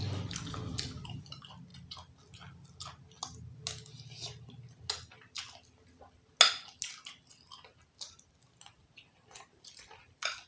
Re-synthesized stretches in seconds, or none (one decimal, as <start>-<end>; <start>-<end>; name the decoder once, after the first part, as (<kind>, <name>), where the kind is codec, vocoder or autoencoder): none